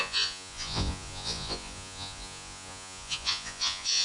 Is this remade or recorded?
remade